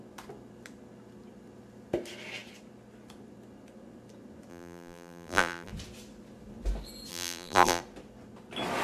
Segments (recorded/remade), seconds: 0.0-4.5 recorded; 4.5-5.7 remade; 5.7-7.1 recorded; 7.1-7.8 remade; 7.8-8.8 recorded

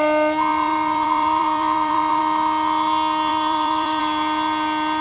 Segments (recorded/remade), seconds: 0.0-0.5 recorded; 0.5-2.2 remade; 2.2-3.3 recorded; 3.3-4.0 remade; 4.0-5.0 recorded

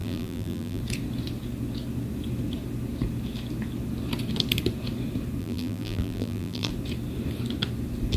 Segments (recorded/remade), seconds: 0.0-0.8 remade; 0.8-5.4 recorded; 5.4-6.7 remade; 6.7-8.2 recorded

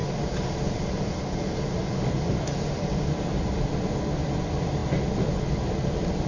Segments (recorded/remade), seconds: 0.0-2.6 recorded; 2.6-4.8 remade; 4.8-5.7 recorded; 5.7-6.3 remade

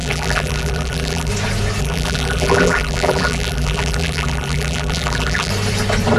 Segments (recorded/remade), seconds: 0.0-1.3 remade; 1.3-1.8 recorded; 1.8-5.5 remade; 5.5-6.2 recorded

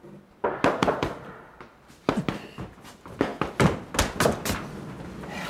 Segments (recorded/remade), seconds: 0.0-0.8 recorded; 0.8-1.5 remade; 1.5-5.5 recorded

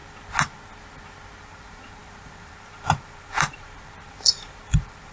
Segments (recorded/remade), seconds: 0.0-1.4 recorded; 1.4-5.1 remade

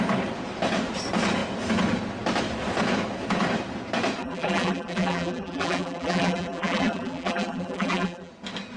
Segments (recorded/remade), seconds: 0.0-4.2 recorded; 4.2-8.3 remade; 8.3-8.8 recorded